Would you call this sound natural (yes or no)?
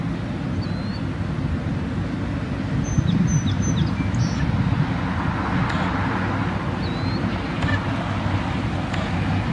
yes